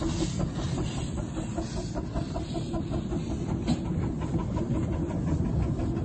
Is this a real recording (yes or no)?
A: yes